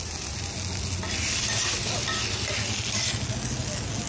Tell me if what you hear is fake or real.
real